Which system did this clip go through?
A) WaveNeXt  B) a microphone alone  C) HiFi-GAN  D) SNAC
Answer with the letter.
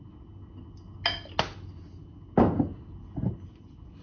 B